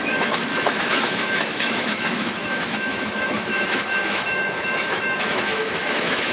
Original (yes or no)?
no